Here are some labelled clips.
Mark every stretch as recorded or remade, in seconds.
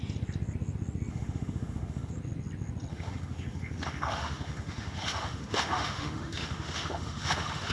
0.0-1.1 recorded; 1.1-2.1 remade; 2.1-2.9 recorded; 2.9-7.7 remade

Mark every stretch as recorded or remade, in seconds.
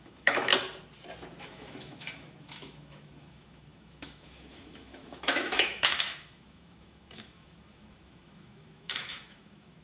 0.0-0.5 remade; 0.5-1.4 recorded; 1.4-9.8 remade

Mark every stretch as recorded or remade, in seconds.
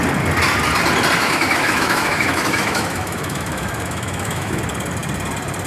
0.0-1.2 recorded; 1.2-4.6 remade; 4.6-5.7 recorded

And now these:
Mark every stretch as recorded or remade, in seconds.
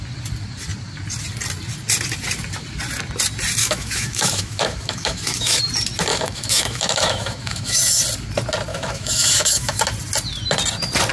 0.0-3.6 recorded; 3.6-5.6 remade; 5.6-6.1 recorded; 6.1-8.0 remade; 8.0-8.7 recorded; 8.7-9.8 remade; 9.8-11.1 recorded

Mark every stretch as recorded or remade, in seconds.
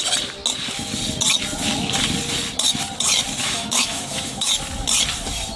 0.0-3.4 recorded; 3.4-4.5 remade; 4.5-5.6 recorded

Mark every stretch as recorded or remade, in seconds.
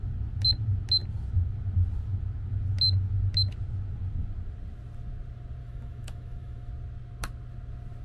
0.0-5.6 recorded; 5.6-6.7 remade; 6.7-8.0 recorded